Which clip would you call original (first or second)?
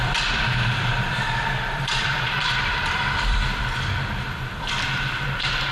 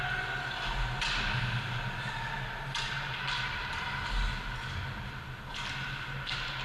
second